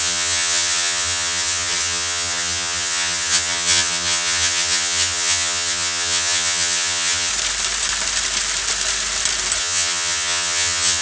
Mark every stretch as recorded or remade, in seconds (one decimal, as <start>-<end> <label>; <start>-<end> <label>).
0.0-7.3 remade; 7.3-9.6 recorded; 9.6-11.0 remade